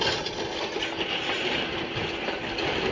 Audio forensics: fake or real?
real